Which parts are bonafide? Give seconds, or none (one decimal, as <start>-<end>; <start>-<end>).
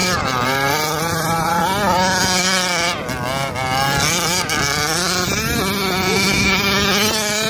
1.6-7.5